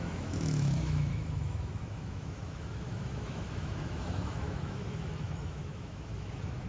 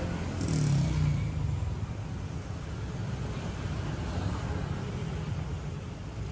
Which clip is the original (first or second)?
second